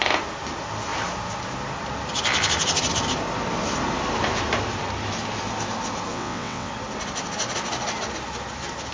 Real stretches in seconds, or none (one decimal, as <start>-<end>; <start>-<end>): 0.0-6.1; 6.7-8.9